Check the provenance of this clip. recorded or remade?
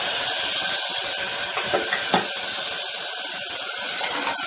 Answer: recorded